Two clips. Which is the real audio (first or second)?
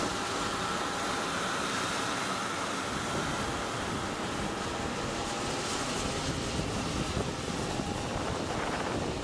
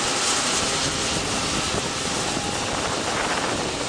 second